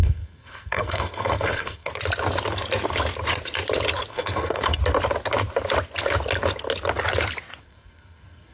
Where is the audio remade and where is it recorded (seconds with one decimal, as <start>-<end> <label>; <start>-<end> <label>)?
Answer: 0.0-1.9 remade; 1.9-4.1 recorded; 4.1-4.8 remade; 4.8-7.6 recorded; 7.6-8.5 remade